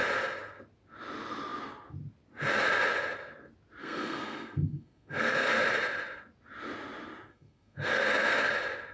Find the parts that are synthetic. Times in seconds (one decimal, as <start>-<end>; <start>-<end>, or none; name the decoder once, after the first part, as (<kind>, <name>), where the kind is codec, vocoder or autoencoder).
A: 3.8-5.5 (codec, SNAC); 7.3-8.5